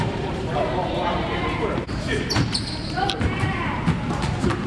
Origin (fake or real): fake